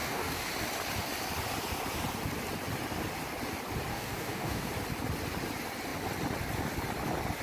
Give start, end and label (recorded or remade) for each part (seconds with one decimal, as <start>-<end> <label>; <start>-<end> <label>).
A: 0.0-0.5 remade; 0.5-3.9 recorded; 3.9-4.7 remade; 4.7-7.4 recorded